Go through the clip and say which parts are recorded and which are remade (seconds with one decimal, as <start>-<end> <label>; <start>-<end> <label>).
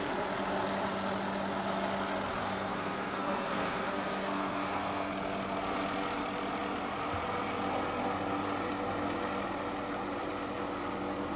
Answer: 0.0-2.4 recorded; 2.4-5.1 remade; 5.1-11.4 recorded